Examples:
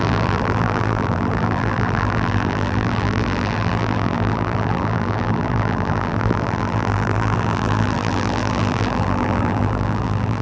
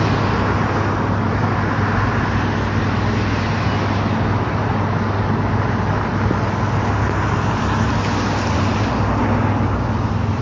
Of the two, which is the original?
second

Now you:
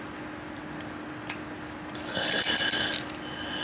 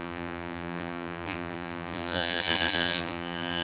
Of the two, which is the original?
first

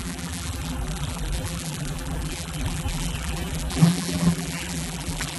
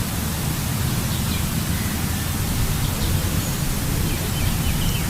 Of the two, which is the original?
second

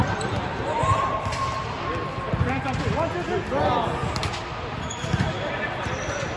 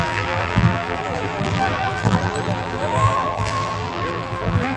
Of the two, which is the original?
first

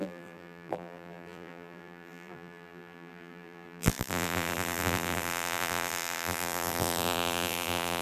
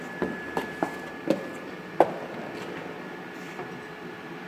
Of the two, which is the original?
second